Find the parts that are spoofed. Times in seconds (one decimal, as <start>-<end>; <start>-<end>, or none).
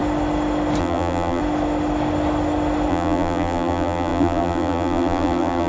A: 0.8-1.4; 2.9-5.7